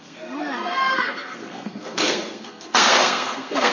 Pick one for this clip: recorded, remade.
remade